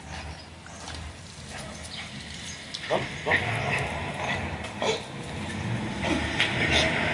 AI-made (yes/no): no